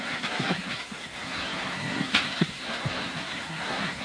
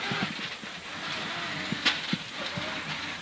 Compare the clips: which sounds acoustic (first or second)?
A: second